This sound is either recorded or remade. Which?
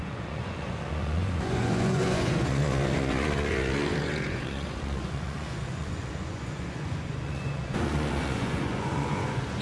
remade